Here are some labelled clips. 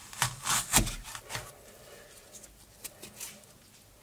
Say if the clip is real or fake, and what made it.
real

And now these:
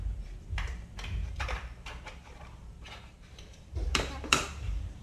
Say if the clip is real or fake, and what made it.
fake, vocoder, BigVGAN v2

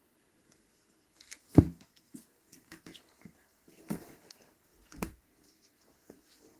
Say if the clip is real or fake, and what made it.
fake, codec, SNAC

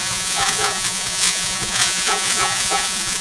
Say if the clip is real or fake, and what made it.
fake, vocoder, Vocos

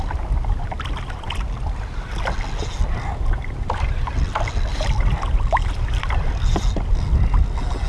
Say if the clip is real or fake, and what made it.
real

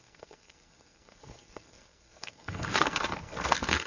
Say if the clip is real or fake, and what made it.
fake, codec, SNAC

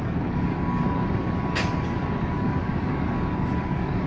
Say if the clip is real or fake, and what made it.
fake, codec, DAC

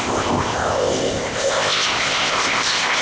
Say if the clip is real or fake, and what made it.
fake, codec, ZipCodec